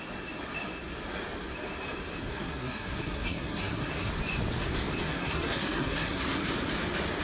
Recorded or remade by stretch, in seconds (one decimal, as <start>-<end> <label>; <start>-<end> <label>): 0.0-2.3 recorded; 2.3-4.1 remade; 4.1-5.1 recorded; 5.1-6.2 remade; 6.2-7.2 recorded